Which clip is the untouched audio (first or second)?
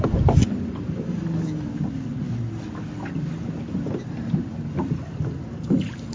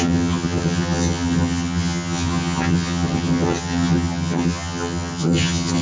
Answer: first